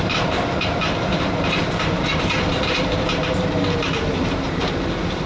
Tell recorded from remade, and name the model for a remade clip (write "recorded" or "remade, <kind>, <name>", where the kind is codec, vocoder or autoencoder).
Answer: remade, vocoder, BigVGAN v2